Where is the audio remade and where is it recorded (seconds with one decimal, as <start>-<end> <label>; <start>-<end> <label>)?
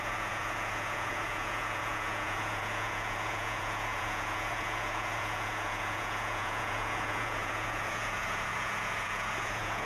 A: 0.0-9.9 remade